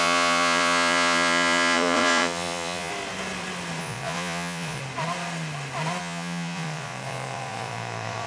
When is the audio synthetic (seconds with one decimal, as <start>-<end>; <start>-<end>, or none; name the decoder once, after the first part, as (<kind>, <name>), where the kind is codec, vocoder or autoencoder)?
0.0-2.9 (vocoder, Vocos); 3.8-4.8; 6.0-8.3